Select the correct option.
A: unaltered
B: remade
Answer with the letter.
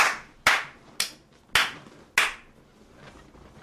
A